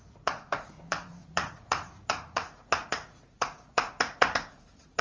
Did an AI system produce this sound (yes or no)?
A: yes